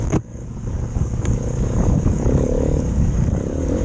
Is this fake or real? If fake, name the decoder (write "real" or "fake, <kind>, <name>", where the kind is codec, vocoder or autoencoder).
fake, codec, DAC